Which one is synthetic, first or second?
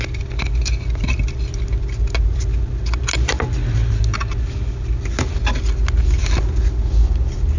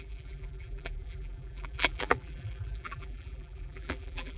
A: second